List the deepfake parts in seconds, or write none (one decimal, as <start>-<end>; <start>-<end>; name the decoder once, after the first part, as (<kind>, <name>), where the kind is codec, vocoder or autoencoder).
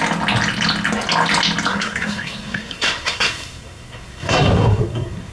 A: 1.7-5.3 (codec, SNAC)